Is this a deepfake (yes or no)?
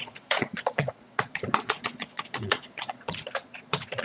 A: yes